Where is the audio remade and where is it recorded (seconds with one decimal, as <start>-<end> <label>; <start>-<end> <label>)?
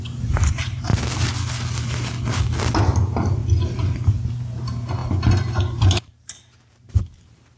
0.0-0.9 remade; 0.9-2.8 recorded; 2.8-3.4 remade; 3.4-4.1 recorded; 4.1-7.6 remade